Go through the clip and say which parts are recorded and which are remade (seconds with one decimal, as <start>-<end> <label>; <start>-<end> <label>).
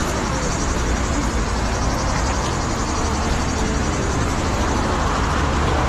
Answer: 0.0-5.9 recorded